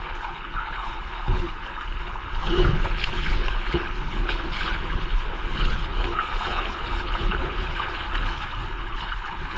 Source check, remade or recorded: remade